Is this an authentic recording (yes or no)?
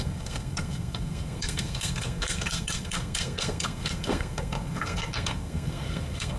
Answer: no